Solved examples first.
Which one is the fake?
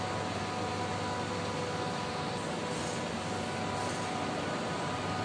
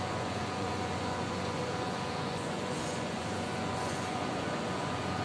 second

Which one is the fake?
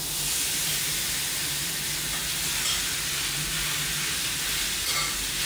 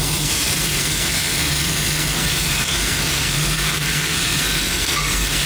second